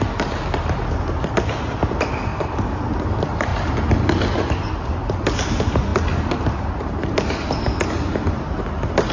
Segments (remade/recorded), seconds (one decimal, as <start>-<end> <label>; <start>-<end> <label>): 0.0-2.3 recorded; 2.3-2.8 remade; 2.8-9.1 recorded